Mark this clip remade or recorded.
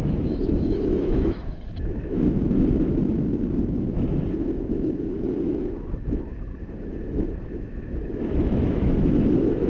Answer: remade